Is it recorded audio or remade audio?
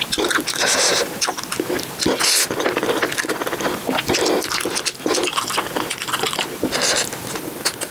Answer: recorded